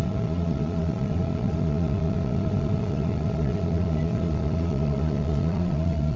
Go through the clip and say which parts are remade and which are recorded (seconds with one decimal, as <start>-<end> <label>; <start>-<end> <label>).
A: 0.0-6.2 remade